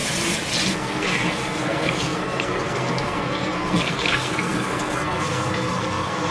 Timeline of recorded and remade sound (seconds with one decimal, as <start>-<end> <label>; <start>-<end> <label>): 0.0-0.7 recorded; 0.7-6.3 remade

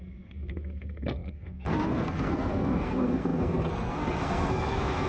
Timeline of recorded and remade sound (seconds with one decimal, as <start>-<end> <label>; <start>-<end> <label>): 0.0-5.1 remade

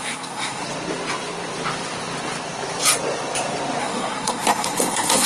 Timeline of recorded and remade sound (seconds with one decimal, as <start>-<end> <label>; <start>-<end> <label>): 0.0-0.6 remade; 0.6-3.8 recorded; 3.8-5.3 remade

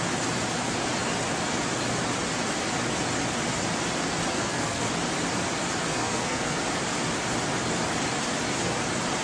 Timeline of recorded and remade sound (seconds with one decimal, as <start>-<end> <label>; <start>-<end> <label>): 0.0-4.3 recorded; 4.3-4.9 remade; 4.9-5.9 recorded; 5.9-6.6 remade; 6.6-9.2 recorded

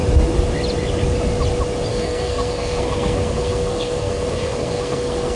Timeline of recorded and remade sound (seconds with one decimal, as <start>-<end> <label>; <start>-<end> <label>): 0.0-1.9 recorded; 1.9-5.4 remade

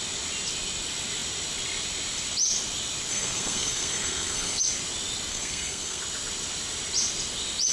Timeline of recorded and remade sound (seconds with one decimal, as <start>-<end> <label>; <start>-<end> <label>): 0.0-3.1 recorded; 3.1-4.6 remade; 4.6-5.3 recorded; 5.3-6.0 remade; 6.0-7.7 recorded

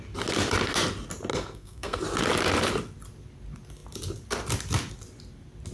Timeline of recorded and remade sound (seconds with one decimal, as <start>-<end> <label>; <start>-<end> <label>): 0.0-1.3 recorded; 1.3-2.0 remade; 2.0-5.7 recorded

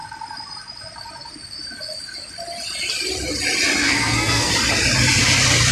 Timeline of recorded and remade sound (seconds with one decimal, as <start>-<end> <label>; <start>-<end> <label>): 0.0-3.8 recorded; 3.8-4.5 remade; 4.5-5.7 recorded